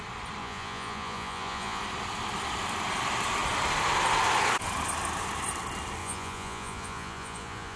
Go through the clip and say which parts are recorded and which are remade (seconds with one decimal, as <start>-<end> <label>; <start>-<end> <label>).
0.0-0.4 recorded; 0.4-1.8 remade; 1.8-6.0 recorded; 6.0-7.8 remade